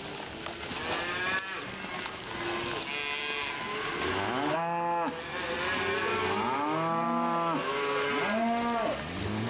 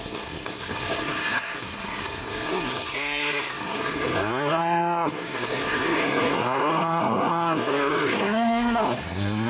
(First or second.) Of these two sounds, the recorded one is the first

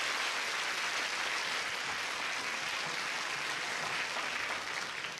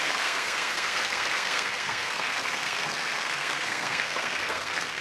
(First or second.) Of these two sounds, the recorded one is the first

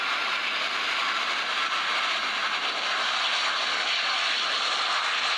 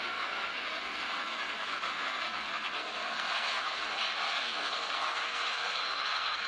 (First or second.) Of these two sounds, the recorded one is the first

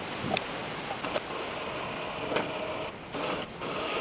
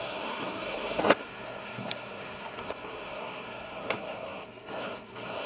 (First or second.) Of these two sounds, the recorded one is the first